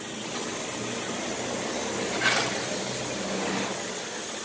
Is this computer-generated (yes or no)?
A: no